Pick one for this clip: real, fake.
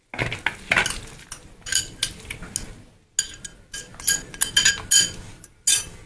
real